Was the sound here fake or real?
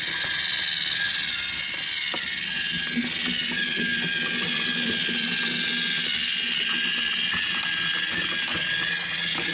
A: real